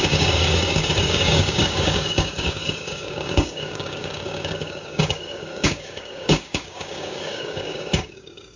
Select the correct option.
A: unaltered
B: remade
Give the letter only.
B